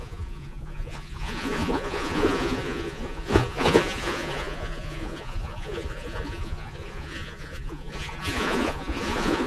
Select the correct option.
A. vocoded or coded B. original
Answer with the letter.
A